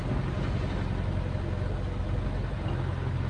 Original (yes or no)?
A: yes